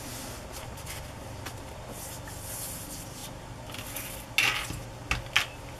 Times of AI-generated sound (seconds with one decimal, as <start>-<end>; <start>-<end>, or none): none